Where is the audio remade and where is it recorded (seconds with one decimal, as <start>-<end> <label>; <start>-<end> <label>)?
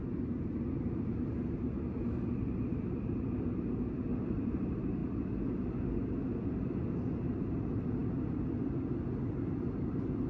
0.0-10.3 recorded